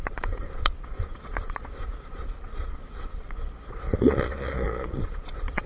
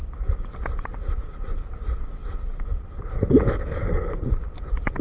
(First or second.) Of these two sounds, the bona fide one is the second